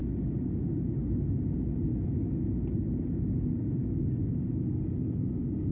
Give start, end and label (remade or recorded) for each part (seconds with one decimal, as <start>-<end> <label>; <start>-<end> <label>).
0.0-5.7 recorded

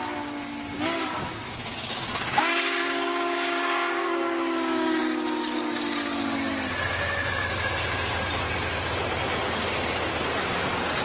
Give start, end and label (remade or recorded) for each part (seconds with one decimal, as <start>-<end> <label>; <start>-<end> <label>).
0.0-1.0 recorded; 1.0-5.0 remade; 5.0-11.0 recorded

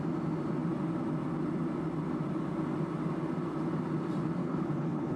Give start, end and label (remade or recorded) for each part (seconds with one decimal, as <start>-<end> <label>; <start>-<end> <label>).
0.0-4.4 recorded; 4.4-5.2 remade

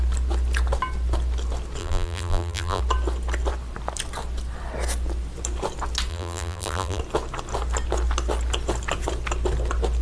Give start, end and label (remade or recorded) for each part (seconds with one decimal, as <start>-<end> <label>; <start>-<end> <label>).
0.0-1.8 recorded; 1.8-2.8 remade; 2.8-6.1 recorded; 6.1-7.0 remade; 7.0-10.0 recorded

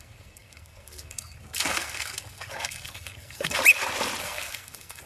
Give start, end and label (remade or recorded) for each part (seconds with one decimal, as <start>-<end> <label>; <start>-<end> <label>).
0.0-3.6 remade; 3.6-4.2 recorded; 4.2-5.1 remade

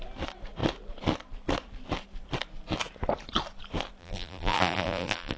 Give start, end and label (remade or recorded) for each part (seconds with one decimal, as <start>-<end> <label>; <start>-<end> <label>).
0.0-4.0 recorded; 4.0-5.4 remade

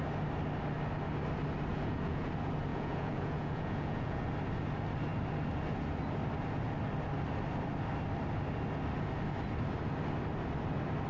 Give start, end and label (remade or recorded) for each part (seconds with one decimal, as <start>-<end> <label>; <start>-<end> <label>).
0.0-1.7 recorded; 1.7-2.3 remade; 2.3-2.7 recorded; 2.7-4.2 remade; 4.2-11.1 recorded

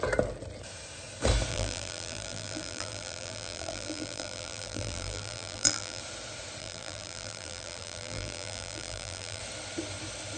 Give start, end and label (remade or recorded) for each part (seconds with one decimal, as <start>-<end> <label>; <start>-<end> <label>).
0.0-1.5 recorded; 1.5-6.0 remade; 6.0-6.6 recorded; 6.6-9.4 remade; 9.4-10.4 recorded